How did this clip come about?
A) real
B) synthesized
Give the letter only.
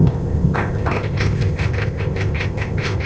B